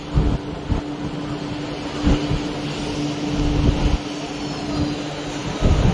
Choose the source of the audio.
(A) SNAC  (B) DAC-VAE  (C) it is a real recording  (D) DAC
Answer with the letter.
C